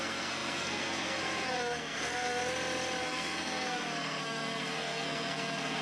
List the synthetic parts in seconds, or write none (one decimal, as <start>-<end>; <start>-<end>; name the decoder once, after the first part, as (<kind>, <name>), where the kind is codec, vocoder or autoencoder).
0.0-2.4 (codec, SNAC); 3.0-5.8